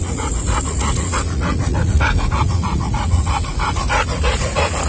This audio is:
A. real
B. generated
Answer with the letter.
B